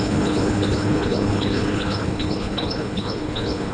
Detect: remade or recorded remade